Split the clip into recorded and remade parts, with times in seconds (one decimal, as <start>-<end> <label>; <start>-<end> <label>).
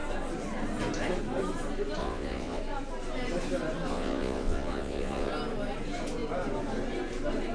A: 0.0-2.0 recorded; 2.0-2.6 remade; 2.6-3.9 recorded; 3.9-5.3 remade; 5.3-7.5 recorded